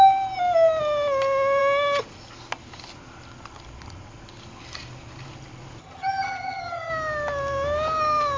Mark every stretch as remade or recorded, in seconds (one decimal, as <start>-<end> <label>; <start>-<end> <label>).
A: 0.0-5.8 recorded; 5.8-6.9 remade; 6.9-8.4 recorded